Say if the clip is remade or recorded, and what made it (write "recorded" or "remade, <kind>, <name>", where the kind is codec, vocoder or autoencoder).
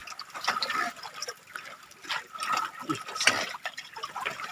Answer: recorded